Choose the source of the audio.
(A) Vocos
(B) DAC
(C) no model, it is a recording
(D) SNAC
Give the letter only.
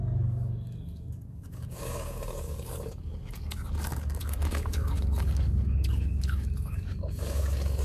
B